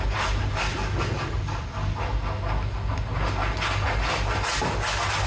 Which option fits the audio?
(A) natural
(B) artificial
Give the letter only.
A